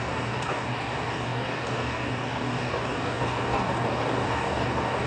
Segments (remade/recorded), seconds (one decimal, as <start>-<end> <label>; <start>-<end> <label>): 0.0-5.1 remade